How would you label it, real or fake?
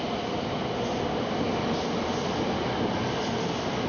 real